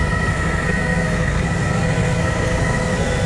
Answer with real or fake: fake